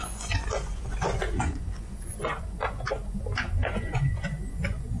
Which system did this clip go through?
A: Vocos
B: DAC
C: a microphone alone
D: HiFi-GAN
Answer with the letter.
A